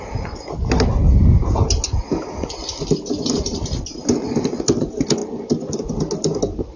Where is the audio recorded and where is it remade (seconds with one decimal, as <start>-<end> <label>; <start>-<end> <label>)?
0.0-6.8 recorded